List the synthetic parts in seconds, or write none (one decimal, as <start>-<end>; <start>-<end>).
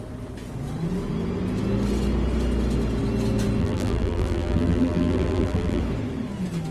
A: 3.6-5.8